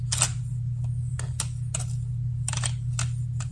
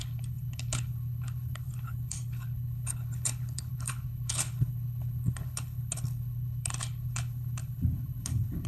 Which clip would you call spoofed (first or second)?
second